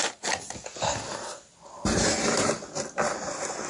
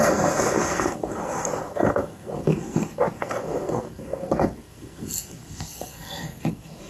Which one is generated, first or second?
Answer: second